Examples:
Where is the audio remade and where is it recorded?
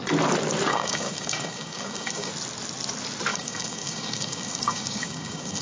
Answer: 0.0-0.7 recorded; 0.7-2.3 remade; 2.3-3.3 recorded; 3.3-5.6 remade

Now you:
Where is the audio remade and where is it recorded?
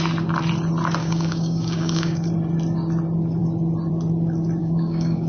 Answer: 0.0-1.0 recorded; 1.0-2.3 remade; 2.3-4.6 recorded; 4.6-5.3 remade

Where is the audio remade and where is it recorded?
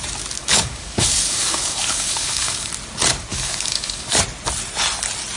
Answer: 0.0-0.4 recorded; 0.4-2.7 remade; 2.7-3.3 recorded; 3.3-4.2 remade; 4.2-5.4 recorded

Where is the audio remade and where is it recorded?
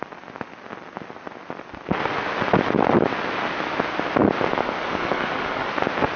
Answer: 0.0-4.5 recorded; 4.5-5.7 remade; 5.7-6.2 recorded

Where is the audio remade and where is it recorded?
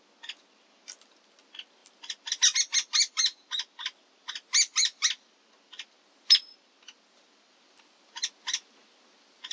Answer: 0.0-9.5 recorded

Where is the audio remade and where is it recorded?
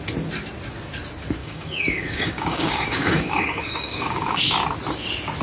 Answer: 0.0-1.4 recorded; 1.4-4.5 remade; 4.5-5.4 recorded